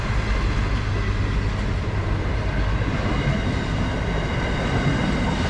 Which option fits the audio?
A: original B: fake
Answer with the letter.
A